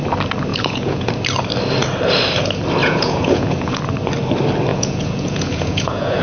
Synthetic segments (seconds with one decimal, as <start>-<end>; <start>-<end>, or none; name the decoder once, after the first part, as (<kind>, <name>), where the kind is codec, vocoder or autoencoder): 0.5-1.1 (vocoder, Vocos); 2.8-3.8; 4.7-6.2